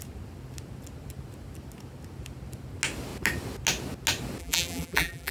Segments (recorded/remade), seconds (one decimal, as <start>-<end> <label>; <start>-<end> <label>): 0.0-4.4 recorded; 4.4-5.3 remade